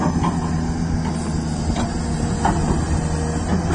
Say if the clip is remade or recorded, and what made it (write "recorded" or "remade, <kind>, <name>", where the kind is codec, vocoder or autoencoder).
recorded